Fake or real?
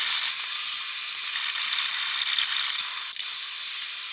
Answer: real